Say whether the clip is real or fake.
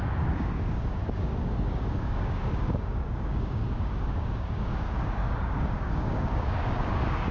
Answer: fake